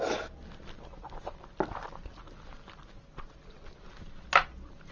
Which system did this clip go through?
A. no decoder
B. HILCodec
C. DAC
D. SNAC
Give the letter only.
A